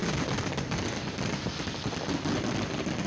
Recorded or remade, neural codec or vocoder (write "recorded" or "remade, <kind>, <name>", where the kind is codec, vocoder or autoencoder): recorded